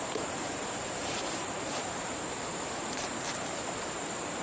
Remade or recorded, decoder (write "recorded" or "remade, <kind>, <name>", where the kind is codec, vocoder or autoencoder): remade, vocoder, BigVGAN v2